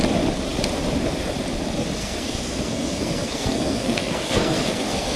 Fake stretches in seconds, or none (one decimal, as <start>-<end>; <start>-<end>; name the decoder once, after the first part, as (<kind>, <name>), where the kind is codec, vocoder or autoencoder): 2.0-5.2 (codec, SNAC)